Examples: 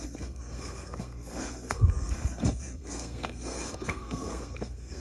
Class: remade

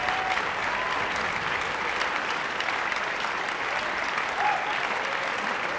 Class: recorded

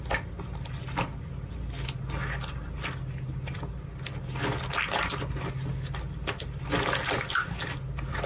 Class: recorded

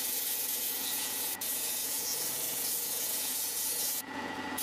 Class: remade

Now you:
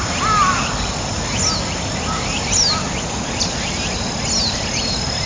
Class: recorded